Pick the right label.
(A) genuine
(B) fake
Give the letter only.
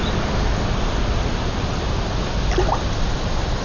A